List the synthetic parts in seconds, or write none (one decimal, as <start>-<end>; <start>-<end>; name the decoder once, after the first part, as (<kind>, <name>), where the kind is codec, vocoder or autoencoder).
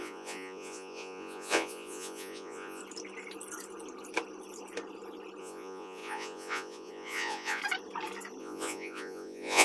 0.0-2.8 (vocoder, Vocos); 5.4-7.6; 8.4-9.6